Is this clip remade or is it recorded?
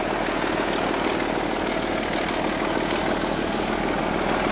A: recorded